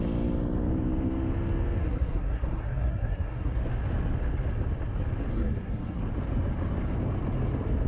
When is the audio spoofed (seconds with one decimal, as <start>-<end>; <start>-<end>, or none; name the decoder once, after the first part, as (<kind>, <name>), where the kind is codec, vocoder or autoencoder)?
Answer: 1.8-3.6 (codec, SNAC); 5.3-6.0